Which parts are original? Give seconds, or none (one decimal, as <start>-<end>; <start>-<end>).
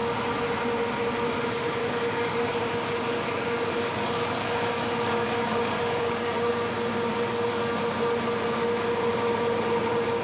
0.0-1.8; 2.6-3.1; 6.5-7.1; 7.8-10.2